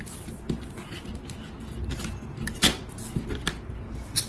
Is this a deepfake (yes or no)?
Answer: no